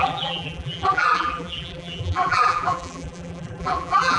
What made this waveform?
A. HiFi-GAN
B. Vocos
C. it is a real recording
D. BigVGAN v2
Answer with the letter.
D